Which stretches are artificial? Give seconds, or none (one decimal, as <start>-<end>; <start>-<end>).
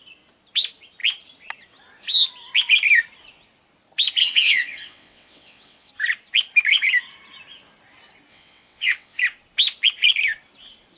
4.2-5.9; 8.3-9.2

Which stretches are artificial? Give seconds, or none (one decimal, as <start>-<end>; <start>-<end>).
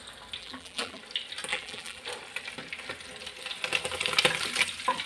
0.4-1.0; 1.5-2.0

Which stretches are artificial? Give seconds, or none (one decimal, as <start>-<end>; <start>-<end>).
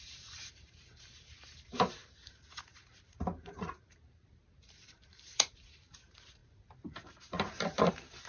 0.0-8.3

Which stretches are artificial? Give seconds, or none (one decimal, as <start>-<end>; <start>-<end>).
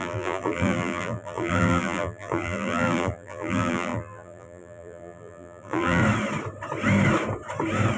0.0-6.0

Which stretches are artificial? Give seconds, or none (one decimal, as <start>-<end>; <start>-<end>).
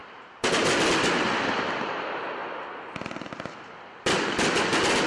none